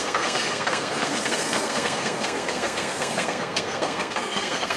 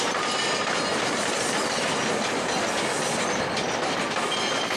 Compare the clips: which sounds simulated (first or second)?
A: first